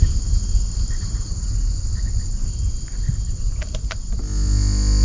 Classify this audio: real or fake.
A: real